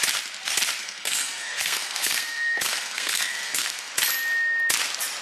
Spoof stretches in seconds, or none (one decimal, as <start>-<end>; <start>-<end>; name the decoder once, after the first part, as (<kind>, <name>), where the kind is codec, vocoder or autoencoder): 0.8-3.9 (codec, SNAC)